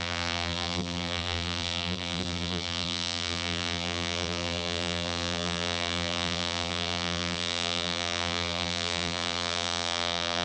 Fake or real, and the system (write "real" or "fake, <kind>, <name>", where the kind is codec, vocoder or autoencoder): fake, vocoder, BigVGAN v2